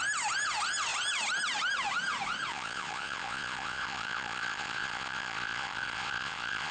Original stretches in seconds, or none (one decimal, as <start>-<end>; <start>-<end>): 0.0-2.5